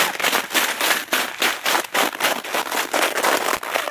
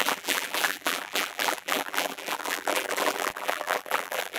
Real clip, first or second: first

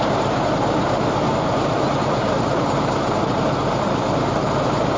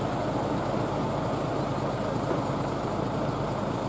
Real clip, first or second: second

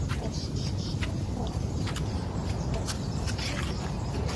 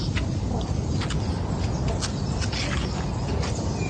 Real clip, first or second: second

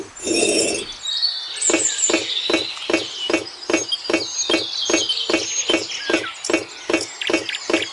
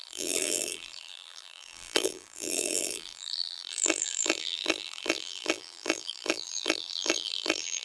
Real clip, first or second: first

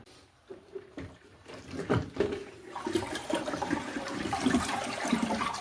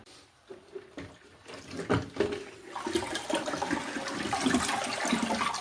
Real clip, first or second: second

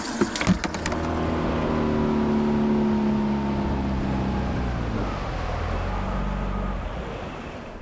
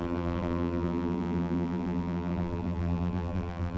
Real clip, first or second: first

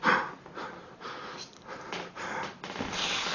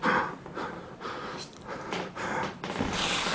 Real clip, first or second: first